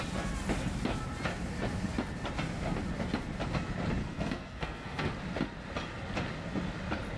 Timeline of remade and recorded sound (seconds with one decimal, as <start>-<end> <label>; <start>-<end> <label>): 0.0-4.0 recorded; 4.0-5.1 remade; 5.1-7.2 recorded